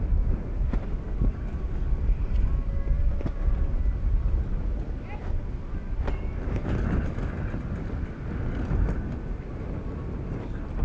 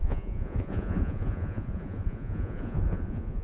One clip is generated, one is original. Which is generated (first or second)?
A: second